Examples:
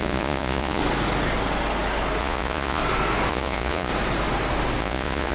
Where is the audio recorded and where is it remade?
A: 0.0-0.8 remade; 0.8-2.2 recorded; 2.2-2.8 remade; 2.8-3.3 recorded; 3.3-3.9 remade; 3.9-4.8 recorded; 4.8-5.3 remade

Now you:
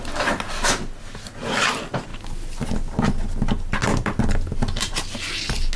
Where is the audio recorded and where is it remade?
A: 0.0-5.8 recorded

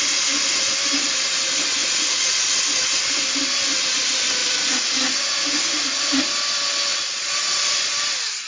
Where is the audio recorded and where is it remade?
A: 0.0-1.8 recorded; 1.8-2.4 remade; 2.4-4.4 recorded; 4.4-6.2 remade; 6.2-6.9 recorded; 6.9-7.9 remade; 7.9-8.5 recorded